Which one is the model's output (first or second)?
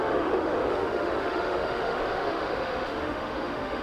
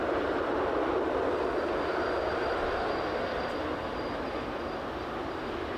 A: first